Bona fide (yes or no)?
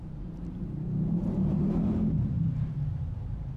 no